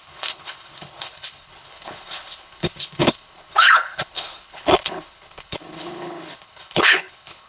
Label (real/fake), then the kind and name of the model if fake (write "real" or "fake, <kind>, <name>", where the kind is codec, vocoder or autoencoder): fake, codec, HILCodec